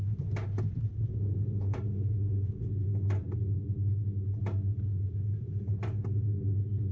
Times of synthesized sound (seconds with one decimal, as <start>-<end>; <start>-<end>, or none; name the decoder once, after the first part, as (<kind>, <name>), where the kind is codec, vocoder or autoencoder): none